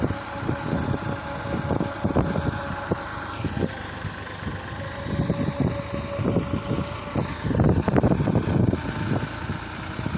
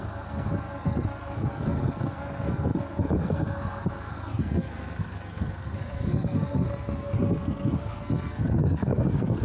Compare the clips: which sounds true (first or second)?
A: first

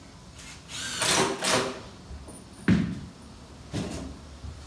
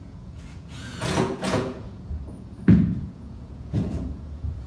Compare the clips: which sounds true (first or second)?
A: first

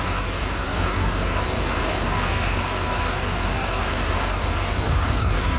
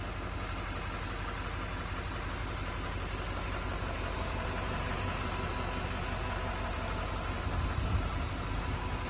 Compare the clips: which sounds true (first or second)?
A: second